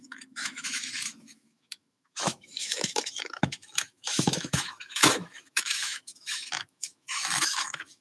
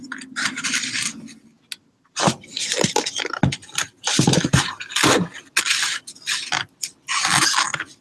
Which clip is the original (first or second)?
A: second